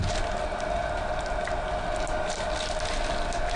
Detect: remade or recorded recorded